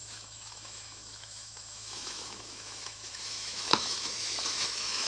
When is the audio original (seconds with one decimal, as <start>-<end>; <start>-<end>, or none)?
none